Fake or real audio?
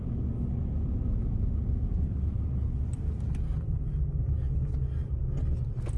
real